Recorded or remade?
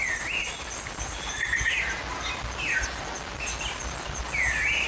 recorded